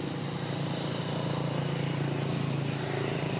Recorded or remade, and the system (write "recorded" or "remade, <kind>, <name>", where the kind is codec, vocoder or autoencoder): recorded